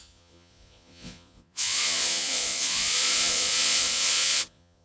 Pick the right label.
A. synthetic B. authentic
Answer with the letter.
A